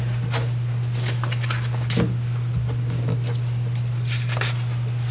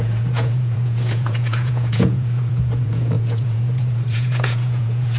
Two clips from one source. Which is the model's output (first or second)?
second